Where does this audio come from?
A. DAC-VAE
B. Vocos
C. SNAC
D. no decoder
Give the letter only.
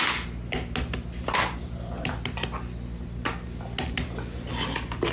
D